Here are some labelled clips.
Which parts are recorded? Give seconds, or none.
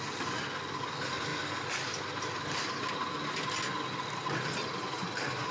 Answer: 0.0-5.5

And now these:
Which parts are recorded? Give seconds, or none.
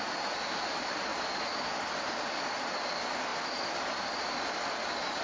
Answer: 0.0-5.2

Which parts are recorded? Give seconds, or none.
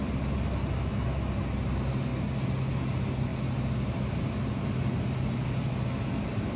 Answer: 0.0-3.3; 4.2-6.6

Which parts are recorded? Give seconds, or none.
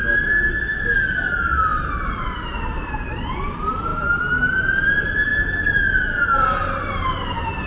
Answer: 0.0-0.8; 3.9-4.5; 5.3-7.7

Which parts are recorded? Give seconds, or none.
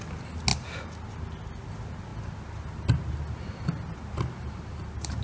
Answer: 0.0-5.2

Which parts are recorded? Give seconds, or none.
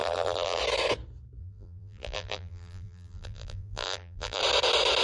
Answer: 0.6-1.4; 4.4-5.0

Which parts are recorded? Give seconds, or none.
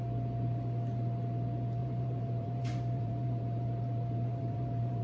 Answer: 0.0-1.8